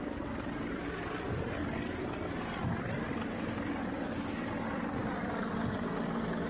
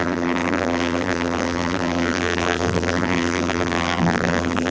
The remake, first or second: second